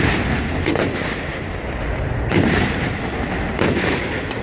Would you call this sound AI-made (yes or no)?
no